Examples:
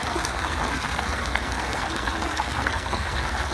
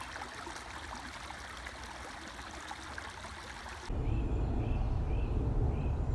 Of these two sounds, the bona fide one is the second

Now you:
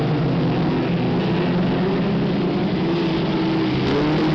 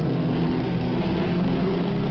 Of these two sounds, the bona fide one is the first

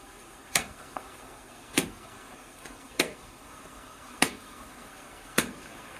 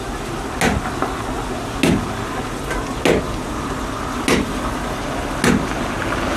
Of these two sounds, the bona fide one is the second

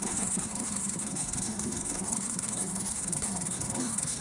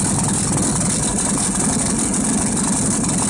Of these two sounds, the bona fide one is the second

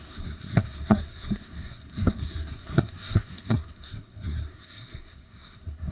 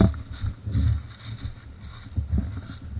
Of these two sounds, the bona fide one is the second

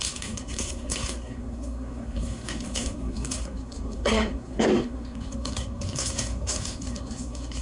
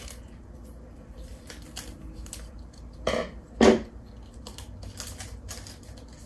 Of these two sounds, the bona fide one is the second